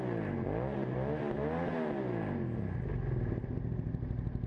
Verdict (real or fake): real